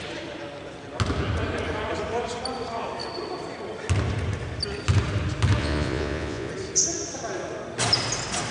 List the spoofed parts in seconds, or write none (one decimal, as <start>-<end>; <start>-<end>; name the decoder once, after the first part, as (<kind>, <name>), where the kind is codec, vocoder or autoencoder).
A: 5.6-6.5 (vocoder, Vocos)